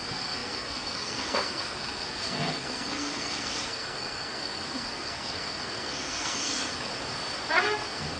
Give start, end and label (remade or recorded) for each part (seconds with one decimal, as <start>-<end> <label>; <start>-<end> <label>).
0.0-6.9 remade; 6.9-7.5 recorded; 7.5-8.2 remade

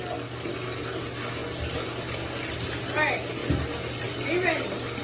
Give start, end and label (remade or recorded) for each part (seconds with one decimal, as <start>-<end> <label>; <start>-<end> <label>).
0.0-5.0 recorded

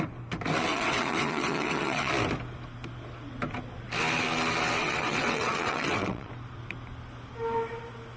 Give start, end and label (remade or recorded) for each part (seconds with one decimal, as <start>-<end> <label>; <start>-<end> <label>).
0.0-0.7 recorded; 0.7-2.1 remade; 2.1-4.8 recorded; 4.8-6.3 remade; 6.3-8.2 recorded